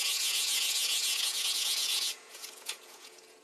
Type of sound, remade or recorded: remade